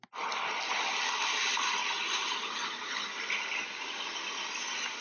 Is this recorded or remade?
recorded